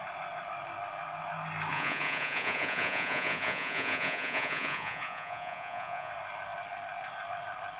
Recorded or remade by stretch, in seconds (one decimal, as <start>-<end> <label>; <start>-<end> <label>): 0.0-1.7 recorded; 1.7-6.1 remade; 6.1-7.8 recorded